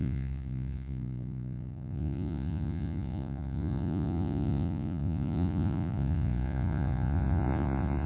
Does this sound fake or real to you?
fake